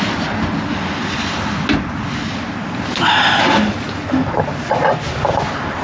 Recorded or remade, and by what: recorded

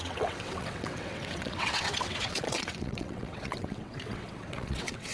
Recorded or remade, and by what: remade, vocoder, WaveNeXt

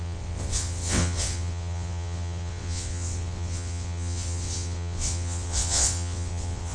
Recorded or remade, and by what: remade, vocoder, WaveNeXt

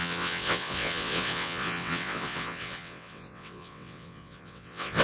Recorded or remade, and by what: remade, vocoder, WaveNeXt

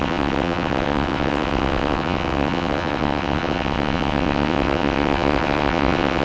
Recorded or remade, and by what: remade, vocoder, WaveNeXt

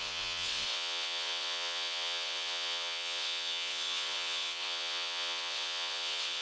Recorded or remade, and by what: remade, vocoder, WaveNeXt